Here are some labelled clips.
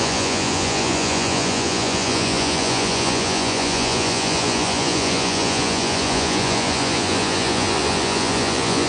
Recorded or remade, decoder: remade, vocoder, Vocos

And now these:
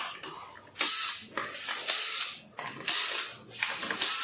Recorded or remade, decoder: recorded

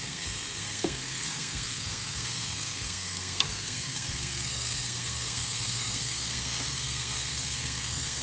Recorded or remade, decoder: remade, codec, SNAC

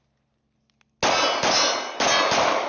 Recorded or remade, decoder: recorded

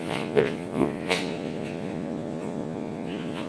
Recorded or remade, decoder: remade, vocoder, Vocos